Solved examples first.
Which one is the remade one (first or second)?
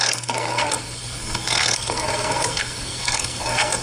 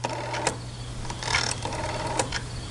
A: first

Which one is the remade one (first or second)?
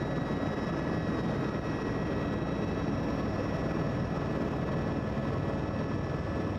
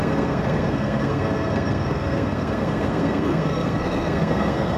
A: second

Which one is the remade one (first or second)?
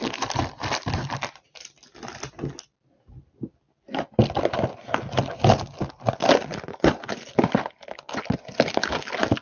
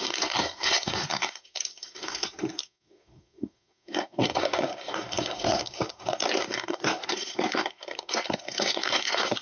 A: second